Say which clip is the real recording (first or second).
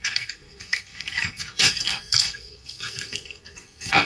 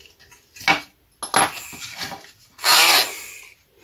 second